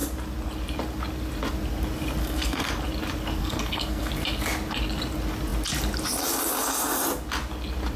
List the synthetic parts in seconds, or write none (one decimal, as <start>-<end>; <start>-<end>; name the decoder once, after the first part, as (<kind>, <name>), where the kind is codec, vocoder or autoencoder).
2.2-2.7 (codec, SNAC); 3.4-4.1